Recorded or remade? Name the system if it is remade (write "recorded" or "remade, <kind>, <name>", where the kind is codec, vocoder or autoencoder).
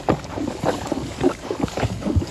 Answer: remade, codec, DAC